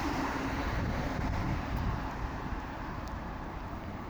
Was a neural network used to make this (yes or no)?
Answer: yes